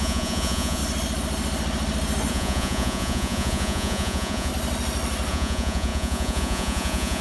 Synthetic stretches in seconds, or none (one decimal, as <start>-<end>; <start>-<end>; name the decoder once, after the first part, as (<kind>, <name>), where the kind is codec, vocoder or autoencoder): 0.0-0.8 (vocoder, Vocos); 2.3-4.5; 5.3-7.2